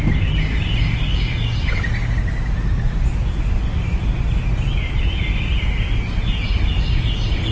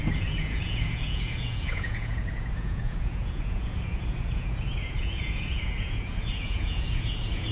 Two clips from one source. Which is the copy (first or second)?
second